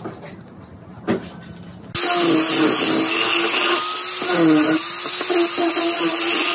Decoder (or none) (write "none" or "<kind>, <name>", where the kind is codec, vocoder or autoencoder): none